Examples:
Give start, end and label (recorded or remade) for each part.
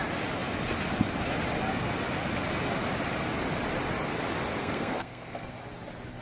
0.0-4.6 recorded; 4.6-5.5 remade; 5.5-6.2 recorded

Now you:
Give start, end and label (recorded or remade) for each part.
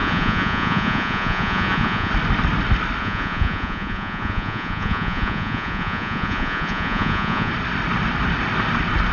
0.0-2.1 remade; 2.1-3.0 recorded; 3.0-7.5 remade; 7.5-9.1 recorded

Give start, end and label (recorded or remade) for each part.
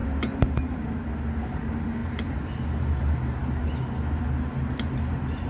0.0-5.5 recorded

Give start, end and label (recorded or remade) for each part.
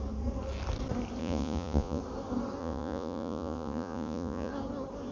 0.0-1.2 recorded; 1.2-2.0 remade; 2.0-2.6 recorded; 2.6-4.5 remade; 4.5-5.1 recorded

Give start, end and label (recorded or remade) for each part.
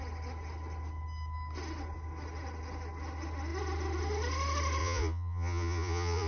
0.0-4.8 recorded; 4.8-6.3 remade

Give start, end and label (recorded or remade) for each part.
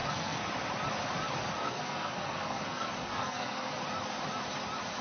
0.0-0.5 remade; 0.5-1.6 recorded; 1.6-3.7 remade; 3.7-5.0 recorded